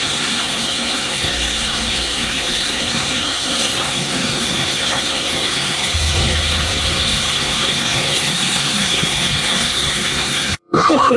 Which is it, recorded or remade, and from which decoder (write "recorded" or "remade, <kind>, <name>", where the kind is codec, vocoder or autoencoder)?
remade, codec, SNAC